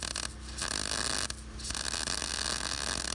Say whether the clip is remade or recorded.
recorded